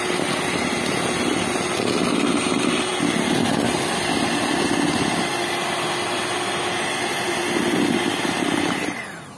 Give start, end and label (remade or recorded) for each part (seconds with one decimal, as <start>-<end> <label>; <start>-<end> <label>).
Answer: 0.0-9.4 recorded